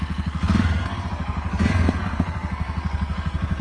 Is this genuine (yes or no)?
no